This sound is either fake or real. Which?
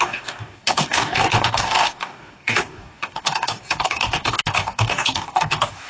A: fake